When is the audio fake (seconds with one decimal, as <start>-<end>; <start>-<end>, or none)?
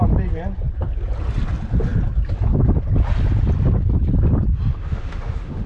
4.7-5.7